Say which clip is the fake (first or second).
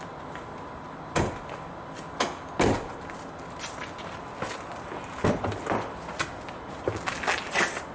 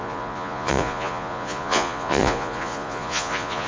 second